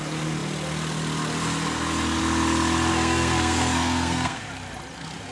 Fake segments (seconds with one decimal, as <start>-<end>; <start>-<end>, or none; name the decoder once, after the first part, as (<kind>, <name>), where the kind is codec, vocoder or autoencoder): 2.9-4.4 (codec, SNAC)